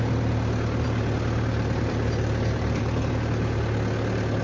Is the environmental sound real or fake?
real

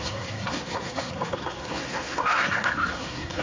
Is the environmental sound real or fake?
fake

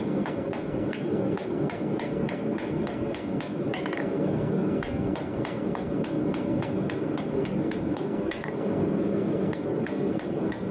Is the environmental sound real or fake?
fake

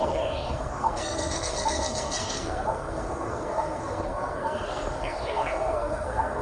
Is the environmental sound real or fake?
fake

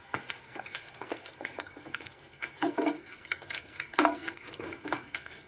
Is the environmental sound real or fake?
fake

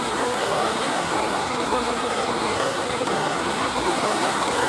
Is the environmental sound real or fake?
fake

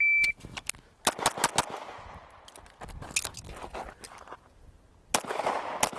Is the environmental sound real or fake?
real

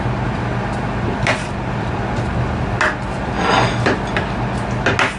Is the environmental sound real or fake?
real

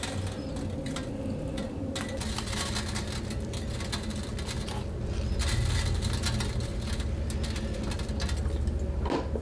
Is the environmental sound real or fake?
real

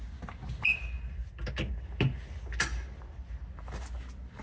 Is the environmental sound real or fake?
real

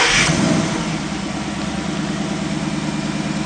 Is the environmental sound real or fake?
real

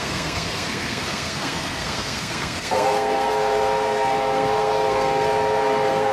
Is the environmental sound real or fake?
fake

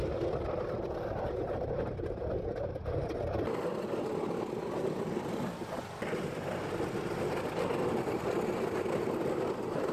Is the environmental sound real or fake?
real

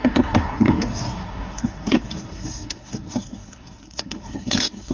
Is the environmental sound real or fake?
fake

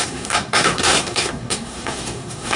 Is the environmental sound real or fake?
fake